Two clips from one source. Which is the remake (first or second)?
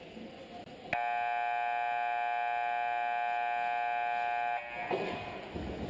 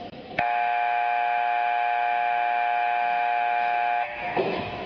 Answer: second